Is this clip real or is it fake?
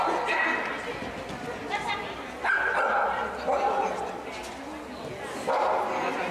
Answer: real